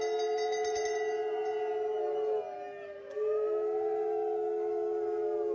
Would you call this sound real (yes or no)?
yes